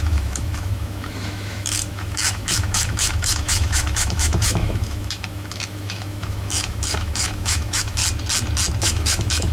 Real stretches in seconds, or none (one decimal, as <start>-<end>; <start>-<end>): 8.0-8.8